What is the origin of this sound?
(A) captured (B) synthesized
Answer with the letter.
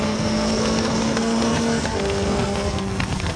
B